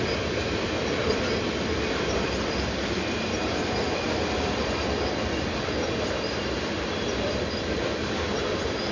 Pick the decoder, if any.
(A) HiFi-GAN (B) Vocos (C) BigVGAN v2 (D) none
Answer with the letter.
C